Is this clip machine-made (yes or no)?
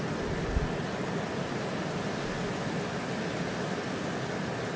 no